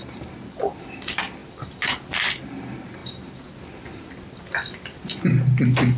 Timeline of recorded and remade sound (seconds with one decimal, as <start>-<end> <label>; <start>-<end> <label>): 0.0-6.0 recorded